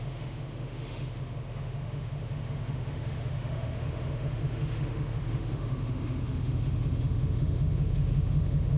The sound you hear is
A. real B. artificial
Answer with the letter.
B